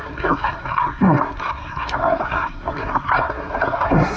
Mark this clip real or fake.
fake